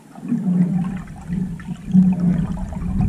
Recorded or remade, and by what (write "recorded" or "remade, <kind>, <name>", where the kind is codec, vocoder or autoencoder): recorded